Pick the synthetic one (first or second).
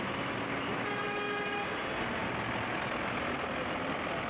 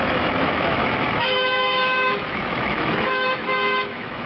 second